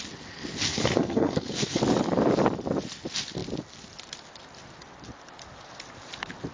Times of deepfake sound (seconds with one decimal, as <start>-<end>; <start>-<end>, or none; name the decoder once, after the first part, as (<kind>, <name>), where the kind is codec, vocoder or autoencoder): 0.7-1.8 (codec, SNAC)